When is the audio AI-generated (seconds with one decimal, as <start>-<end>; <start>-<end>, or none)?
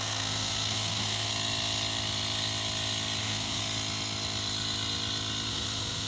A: 0.0-1.3; 3.2-3.6; 5.5-6.1